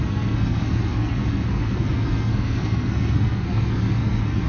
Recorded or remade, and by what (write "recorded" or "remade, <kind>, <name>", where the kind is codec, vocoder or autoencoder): remade, codec, SNAC